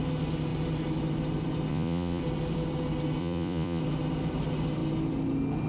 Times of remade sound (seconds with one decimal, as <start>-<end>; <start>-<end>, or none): 1.7-2.2; 3.2-3.8